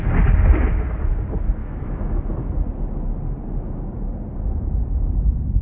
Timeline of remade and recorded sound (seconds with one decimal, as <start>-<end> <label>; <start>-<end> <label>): 0.0-1.6 recorded; 1.6-2.5 remade; 2.5-5.6 recorded